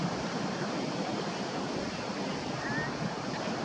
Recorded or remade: recorded